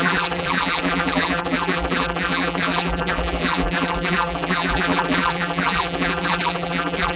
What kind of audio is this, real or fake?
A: fake